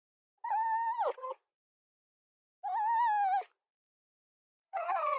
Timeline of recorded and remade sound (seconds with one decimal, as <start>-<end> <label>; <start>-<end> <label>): 0.0-1.1 recorded; 1.1-1.5 remade; 1.5-3.6 recorded; 3.6-5.2 remade